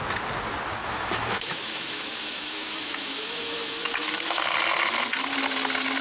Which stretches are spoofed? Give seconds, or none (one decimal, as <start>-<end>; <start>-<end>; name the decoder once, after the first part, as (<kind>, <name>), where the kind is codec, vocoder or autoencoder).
0.8-4.4 (autoencoder, DAC-VAE)